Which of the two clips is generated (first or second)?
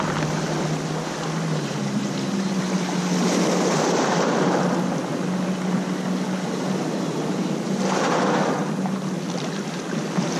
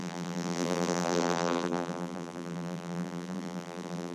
second